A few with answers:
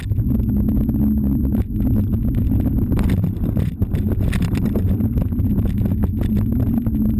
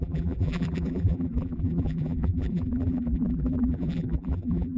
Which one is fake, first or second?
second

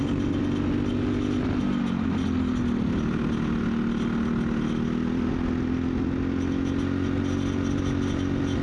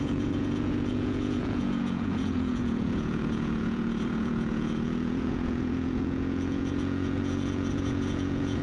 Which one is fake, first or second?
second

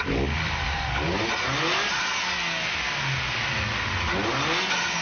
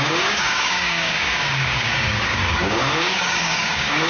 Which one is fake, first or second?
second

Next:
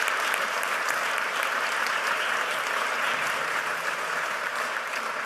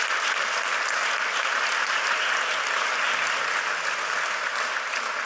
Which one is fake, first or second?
first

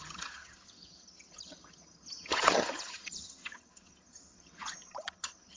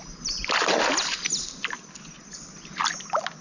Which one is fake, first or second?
first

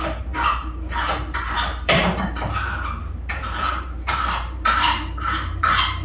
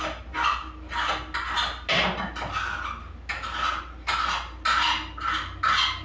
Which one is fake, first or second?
first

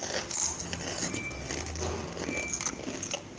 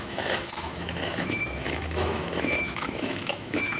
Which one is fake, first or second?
second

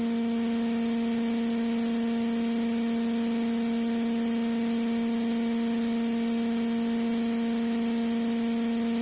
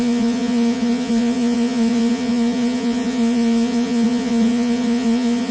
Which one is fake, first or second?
second